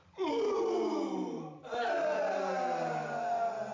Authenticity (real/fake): real